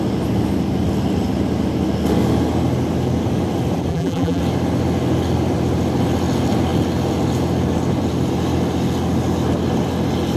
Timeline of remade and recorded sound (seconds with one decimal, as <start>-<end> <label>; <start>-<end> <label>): 0.0-3.9 recorded; 3.9-4.4 remade; 4.4-10.4 recorded

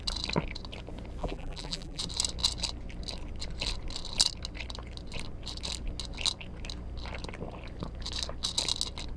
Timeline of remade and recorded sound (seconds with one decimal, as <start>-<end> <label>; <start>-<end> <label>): 0.0-1.2 recorded; 1.2-2.0 remade; 2.0-9.2 recorded